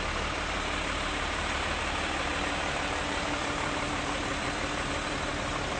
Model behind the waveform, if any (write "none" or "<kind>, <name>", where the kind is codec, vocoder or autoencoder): vocoder, BigVGAN v2